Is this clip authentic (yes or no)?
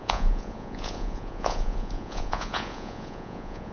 no